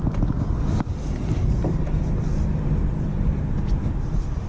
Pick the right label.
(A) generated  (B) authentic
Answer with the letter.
B